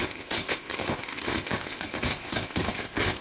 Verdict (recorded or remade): remade